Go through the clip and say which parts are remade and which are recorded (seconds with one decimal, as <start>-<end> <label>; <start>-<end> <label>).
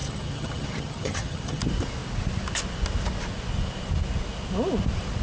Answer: 0.0-1.6 remade; 1.6-5.2 recorded